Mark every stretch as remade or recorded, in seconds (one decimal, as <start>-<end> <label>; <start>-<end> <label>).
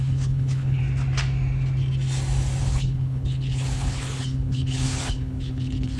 0.0-0.8 remade; 0.8-2.6 recorded; 2.6-6.0 remade